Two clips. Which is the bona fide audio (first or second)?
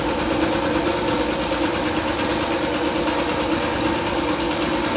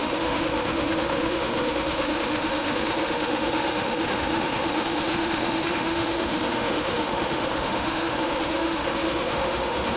first